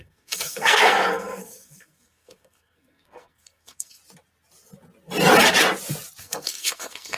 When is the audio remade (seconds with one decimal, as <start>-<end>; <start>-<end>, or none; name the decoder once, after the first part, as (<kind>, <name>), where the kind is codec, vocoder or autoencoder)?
0.0-4.0 (codec, SNAC); 6.2-7.2